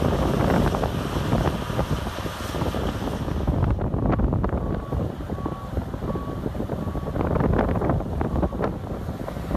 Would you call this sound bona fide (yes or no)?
yes